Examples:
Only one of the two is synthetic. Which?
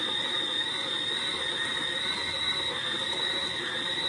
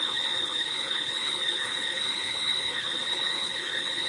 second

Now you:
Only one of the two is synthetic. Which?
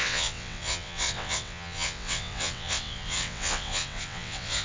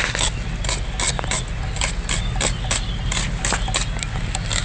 first